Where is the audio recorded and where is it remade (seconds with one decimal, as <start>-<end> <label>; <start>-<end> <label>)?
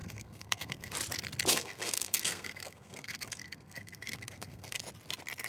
0.0-0.9 remade; 0.9-1.5 recorded; 1.5-4.8 remade; 4.8-5.5 recorded